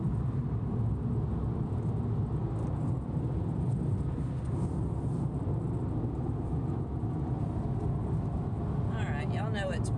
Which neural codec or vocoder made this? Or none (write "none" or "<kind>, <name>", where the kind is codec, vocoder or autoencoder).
none